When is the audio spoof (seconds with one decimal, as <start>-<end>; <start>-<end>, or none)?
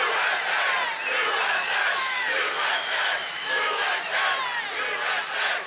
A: 1.4-4.2